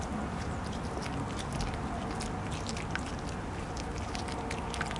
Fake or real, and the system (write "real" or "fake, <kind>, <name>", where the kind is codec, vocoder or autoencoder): real